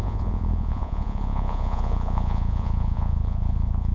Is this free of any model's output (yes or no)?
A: no